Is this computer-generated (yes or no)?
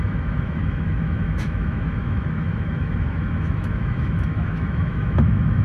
yes